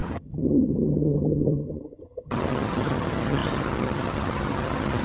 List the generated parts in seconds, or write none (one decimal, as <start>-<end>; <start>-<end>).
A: 0.0-5.0